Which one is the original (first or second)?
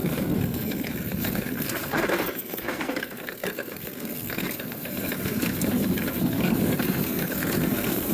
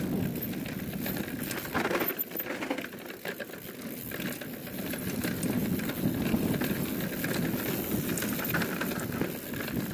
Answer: second